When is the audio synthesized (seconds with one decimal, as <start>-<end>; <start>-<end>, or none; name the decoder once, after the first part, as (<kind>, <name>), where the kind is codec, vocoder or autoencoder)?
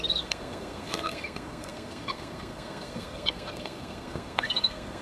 0.0-5.0 (codec, SNAC)